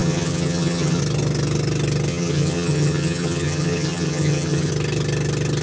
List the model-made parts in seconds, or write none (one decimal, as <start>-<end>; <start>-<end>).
0.0-1.0; 2.1-4.7